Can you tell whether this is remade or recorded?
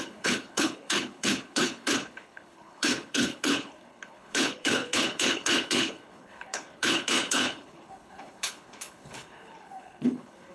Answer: remade